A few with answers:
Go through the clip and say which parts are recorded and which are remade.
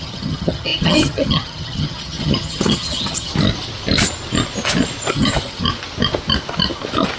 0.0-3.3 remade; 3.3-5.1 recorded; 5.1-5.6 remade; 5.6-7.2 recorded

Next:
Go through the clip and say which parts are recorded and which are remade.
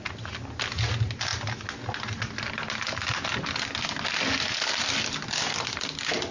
0.0-6.3 recorded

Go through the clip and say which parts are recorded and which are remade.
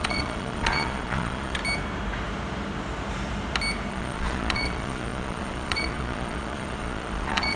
0.0-1.6 remade; 1.6-3.9 recorded; 3.9-7.6 remade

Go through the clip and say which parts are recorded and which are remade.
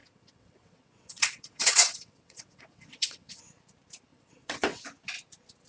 0.0-3.4 remade; 3.4-4.1 recorded; 4.1-4.8 remade; 4.8-5.7 recorded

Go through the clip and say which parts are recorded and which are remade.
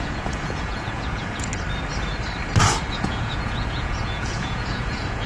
0.0-1.5 remade; 1.5-2.9 recorded; 2.9-5.3 remade